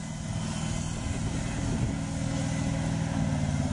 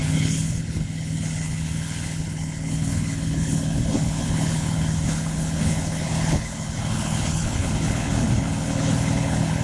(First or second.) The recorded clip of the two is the first